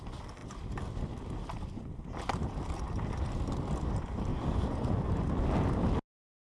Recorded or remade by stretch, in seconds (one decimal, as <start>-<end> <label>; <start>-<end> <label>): 0.0-4.3 recorded; 4.3-5.0 remade; 5.0-6.5 recorded